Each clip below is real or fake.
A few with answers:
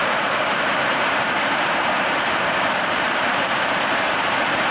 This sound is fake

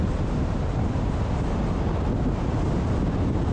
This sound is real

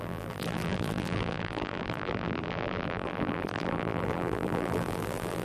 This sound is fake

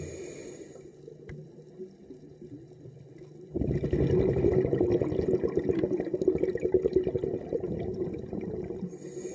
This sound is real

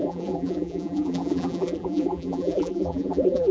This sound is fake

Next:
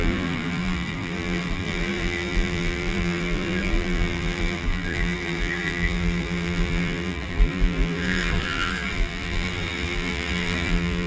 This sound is fake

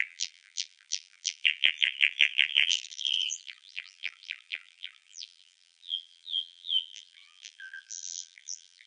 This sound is fake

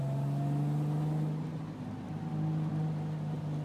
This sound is real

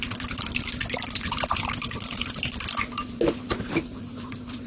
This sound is real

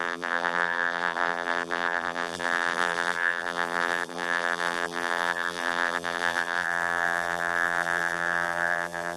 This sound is fake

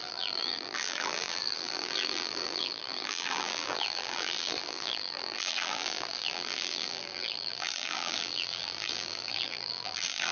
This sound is fake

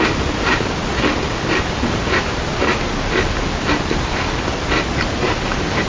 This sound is real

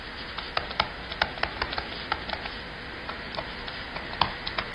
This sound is fake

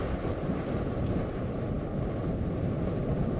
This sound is fake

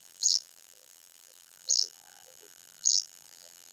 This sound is fake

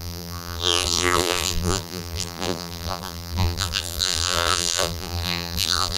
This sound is fake